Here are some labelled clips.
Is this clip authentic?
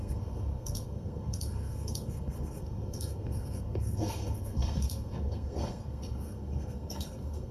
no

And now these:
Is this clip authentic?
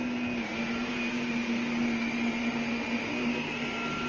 yes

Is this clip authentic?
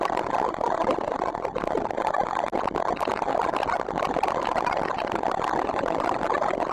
yes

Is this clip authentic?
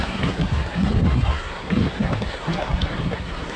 no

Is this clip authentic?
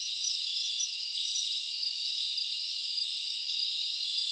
no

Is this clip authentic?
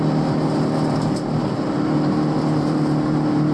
no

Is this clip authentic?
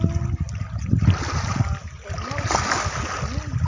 yes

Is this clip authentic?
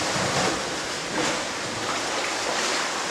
yes